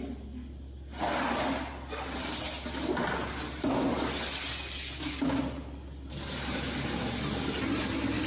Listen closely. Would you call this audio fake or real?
real